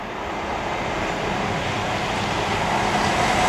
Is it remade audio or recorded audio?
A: recorded